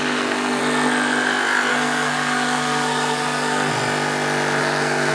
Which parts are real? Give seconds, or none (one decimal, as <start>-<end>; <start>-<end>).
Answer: 0.6-1.7; 3.7-4.6